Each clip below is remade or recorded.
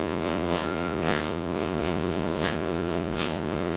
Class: remade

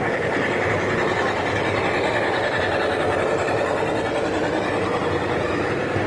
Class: recorded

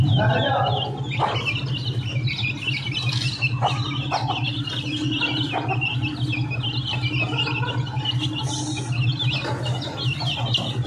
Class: recorded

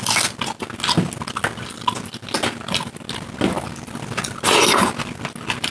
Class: recorded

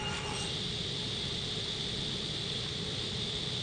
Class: recorded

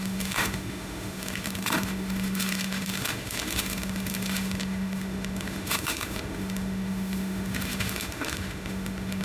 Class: remade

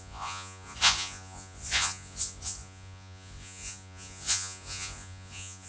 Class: remade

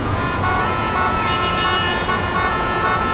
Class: remade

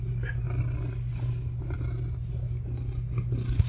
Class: recorded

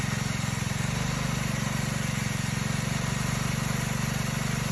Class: remade